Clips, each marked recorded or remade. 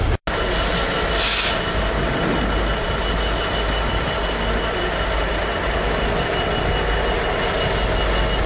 recorded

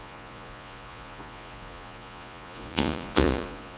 remade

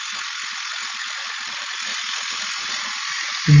recorded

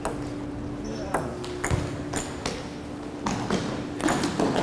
recorded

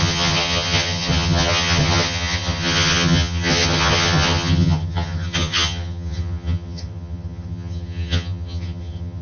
remade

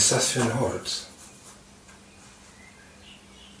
recorded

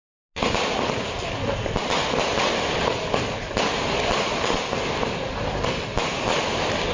recorded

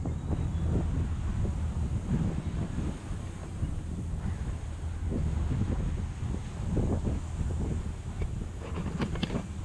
recorded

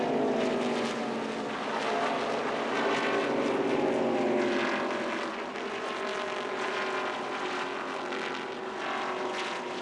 recorded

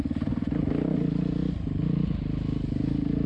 recorded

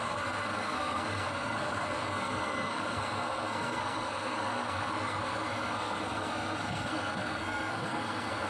remade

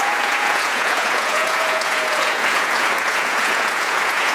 remade